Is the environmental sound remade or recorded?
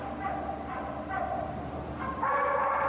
recorded